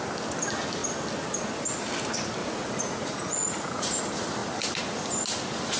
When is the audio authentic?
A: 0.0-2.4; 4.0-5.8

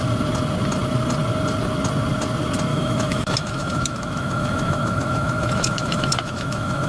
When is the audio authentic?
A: 0.0-2.7

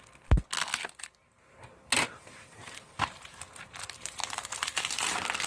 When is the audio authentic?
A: 0.0-1.2; 4.5-5.5

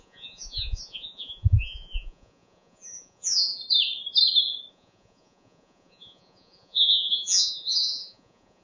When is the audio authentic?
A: 3.6-4.7